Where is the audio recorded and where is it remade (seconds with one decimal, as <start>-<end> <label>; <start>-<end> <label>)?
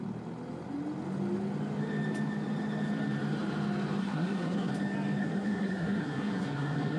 0.0-4.0 recorded; 4.0-4.7 remade; 4.7-5.2 recorded; 5.2-7.0 remade